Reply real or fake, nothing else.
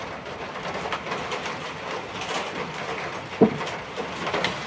real